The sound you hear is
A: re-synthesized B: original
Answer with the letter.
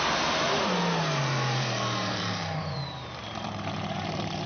A